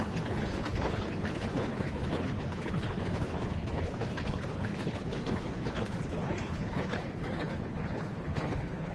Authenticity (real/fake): fake